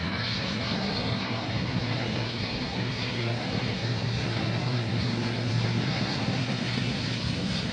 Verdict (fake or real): fake